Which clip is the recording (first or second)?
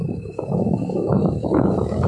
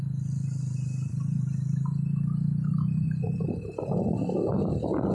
second